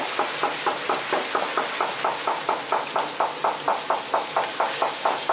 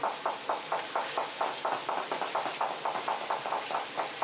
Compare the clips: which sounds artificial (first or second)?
second